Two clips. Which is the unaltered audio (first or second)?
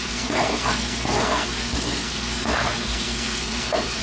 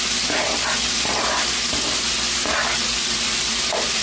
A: second